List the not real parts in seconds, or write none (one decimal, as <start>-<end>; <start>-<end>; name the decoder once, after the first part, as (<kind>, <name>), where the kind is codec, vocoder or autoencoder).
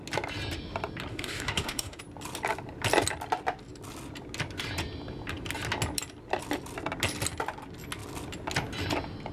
1.1-2.0 (autoencoder, DAC-VAE)